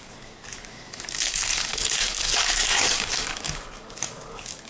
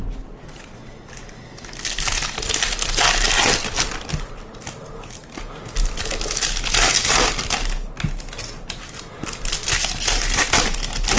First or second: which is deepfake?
first